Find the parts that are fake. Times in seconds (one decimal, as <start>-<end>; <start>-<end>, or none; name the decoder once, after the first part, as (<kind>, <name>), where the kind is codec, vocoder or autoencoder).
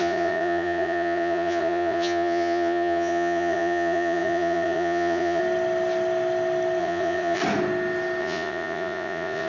0.0-5.4 (vocoder, Vocos); 6.8-7.4; 8.2-9.5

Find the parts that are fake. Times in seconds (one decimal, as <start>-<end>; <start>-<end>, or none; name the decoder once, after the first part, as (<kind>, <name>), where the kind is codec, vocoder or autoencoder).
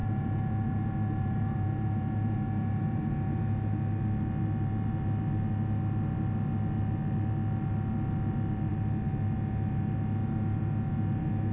0.0-3.1 (vocoder, BigVGAN v2)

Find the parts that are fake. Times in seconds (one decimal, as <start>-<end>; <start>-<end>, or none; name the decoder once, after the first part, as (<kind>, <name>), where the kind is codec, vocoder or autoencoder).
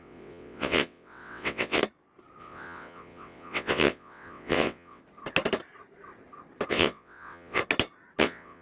0.0-1.8 (vocoder, WaveNeXt); 2.4-5.0; 6.7-7.6; 8.2-8.6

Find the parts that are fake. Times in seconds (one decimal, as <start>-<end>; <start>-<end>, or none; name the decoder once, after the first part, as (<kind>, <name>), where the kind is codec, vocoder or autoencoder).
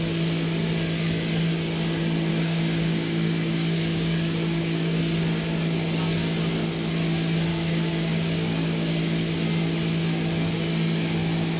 2.3-5.0 (codec, DAC); 7.5-9.0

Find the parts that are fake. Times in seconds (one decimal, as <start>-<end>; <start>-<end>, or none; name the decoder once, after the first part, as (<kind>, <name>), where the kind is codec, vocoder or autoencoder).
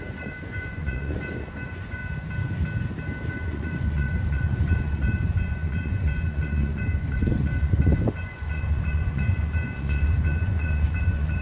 0.0-2.0 (vocoder, Vocos); 3.3-11.4